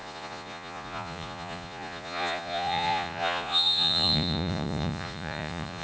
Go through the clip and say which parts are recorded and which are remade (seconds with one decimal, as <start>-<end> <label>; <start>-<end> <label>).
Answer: 0.0-5.8 remade